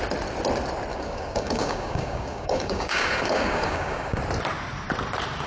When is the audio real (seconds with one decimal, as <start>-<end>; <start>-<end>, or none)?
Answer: 0.0-0.9; 4.2-5.5